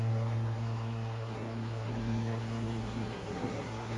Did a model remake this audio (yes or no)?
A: yes